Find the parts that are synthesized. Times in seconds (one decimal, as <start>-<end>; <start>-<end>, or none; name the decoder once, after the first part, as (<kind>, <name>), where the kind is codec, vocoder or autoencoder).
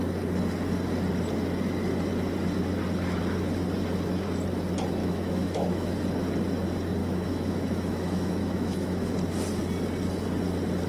5.0-5.9 (autoencoder, DAC-VAE); 7.0-9.1